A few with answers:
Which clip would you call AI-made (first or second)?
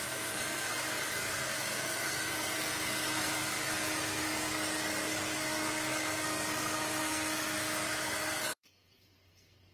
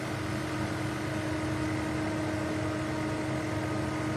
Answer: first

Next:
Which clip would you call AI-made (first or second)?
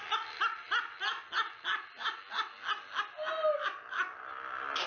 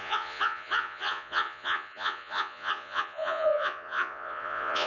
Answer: second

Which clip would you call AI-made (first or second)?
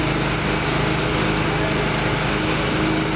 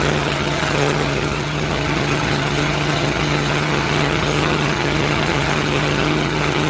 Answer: second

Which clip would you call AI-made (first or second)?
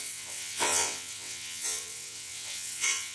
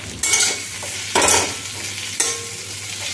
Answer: first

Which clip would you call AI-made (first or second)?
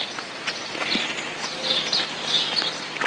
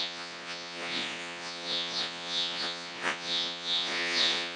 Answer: second